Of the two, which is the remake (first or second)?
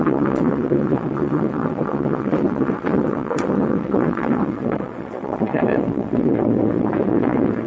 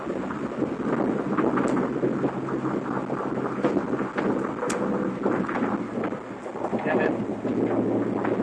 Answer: first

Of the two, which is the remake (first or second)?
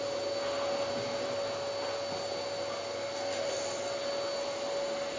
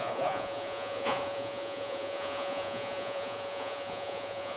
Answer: second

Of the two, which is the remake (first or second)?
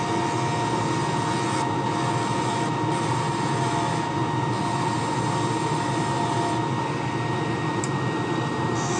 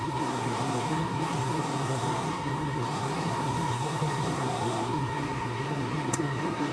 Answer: second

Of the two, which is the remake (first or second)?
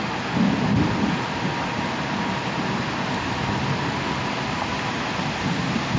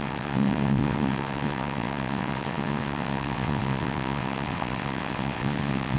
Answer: second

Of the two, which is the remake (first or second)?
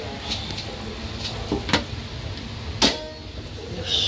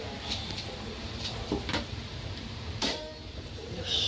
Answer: second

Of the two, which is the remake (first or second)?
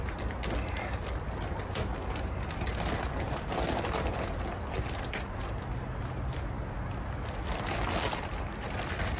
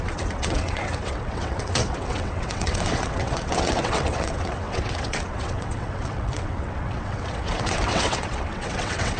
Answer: second